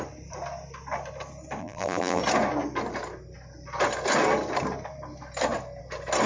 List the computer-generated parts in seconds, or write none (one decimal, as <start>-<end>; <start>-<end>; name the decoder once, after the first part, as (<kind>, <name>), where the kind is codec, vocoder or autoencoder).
1.6-2.2 (vocoder, BigVGAN v2)